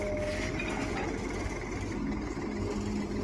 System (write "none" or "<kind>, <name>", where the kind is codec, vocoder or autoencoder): none